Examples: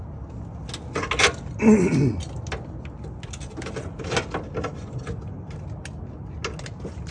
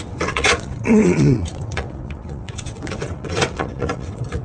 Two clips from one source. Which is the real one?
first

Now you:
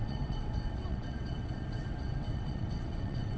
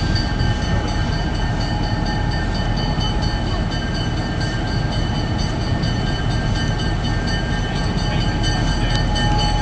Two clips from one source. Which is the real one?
second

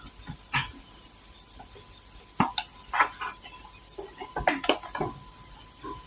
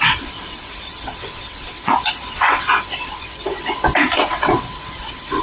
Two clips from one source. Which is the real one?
first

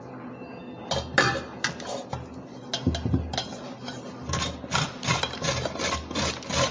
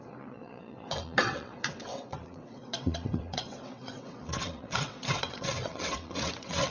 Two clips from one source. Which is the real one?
first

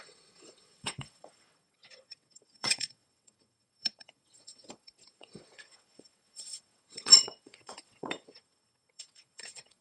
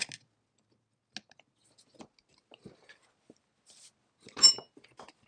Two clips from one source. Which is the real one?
second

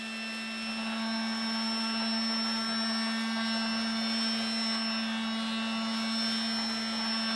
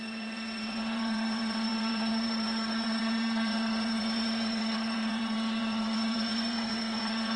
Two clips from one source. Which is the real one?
first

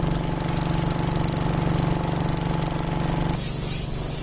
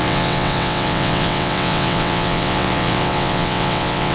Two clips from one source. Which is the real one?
first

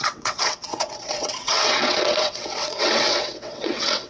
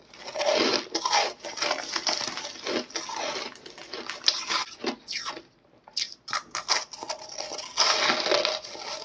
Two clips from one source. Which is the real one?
second